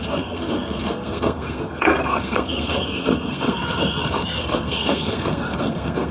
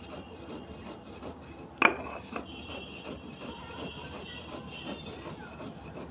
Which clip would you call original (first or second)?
second